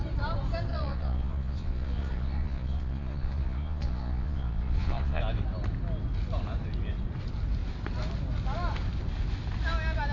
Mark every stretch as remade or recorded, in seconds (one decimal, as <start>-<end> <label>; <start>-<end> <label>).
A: 0.0-0.7 recorded; 0.7-5.2 remade; 5.2-10.1 recorded